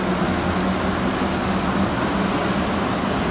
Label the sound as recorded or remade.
recorded